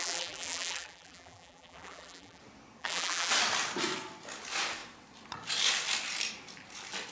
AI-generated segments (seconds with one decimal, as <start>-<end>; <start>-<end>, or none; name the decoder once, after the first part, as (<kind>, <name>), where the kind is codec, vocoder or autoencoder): 0.0-2.4 (vocoder, BigVGAN v2); 2.8-3.3